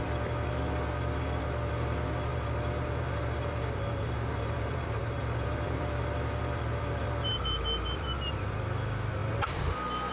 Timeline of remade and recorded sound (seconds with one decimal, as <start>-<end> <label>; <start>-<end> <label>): 0.0-2.3 recorded; 2.3-5.8 remade; 5.8-10.1 recorded